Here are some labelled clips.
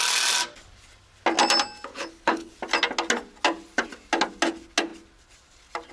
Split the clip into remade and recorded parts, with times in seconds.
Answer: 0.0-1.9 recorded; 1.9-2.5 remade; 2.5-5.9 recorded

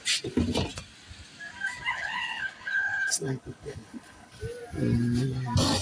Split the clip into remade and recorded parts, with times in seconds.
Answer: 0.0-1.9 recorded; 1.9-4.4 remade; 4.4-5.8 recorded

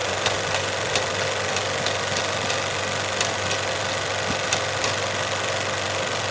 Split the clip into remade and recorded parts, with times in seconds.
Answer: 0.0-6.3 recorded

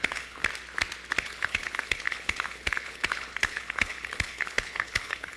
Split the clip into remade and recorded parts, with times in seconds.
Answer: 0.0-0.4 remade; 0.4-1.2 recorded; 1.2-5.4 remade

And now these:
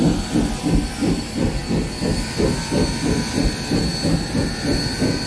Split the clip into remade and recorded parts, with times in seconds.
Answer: 0.0-5.3 recorded

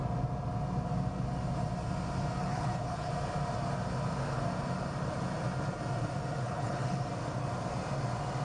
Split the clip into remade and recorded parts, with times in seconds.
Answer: 0.0-2.4 recorded; 2.4-3.1 remade; 3.1-6.4 recorded; 6.4-7.0 remade; 7.0-8.4 recorded

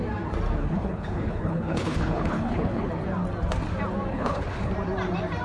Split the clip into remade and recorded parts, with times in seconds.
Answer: 0.0-0.6 recorded; 0.6-2.9 remade; 2.9-4.1 recorded; 4.1-4.7 remade; 4.7-5.4 recorded